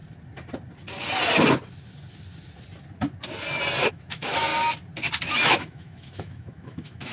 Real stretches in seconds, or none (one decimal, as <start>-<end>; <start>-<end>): 0.0-3.9; 4.5-5.3